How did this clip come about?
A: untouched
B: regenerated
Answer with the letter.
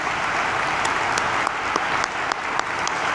A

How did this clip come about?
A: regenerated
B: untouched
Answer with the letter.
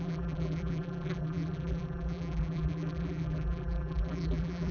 A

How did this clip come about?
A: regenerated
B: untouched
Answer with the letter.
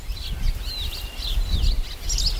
B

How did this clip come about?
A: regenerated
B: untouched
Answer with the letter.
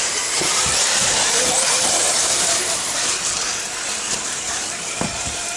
A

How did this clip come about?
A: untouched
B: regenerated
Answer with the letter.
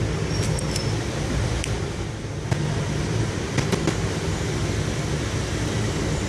A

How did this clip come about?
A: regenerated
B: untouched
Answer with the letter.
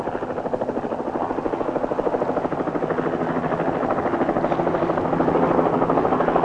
B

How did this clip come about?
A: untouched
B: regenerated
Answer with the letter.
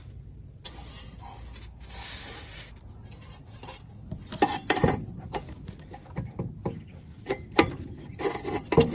A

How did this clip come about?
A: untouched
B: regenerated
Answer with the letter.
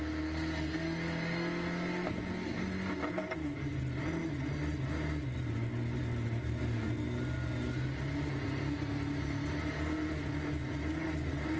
A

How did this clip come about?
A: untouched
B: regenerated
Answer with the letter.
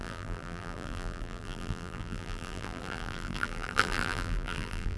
B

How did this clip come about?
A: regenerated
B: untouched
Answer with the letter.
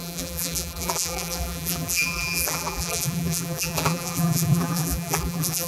A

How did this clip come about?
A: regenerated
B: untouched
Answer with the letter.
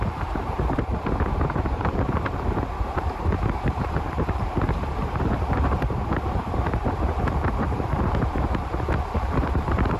A